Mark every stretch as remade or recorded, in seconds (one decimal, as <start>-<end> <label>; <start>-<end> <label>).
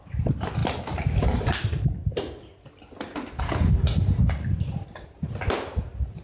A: 0.0-6.2 recorded